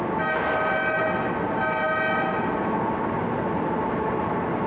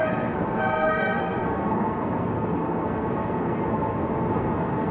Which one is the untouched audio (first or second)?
first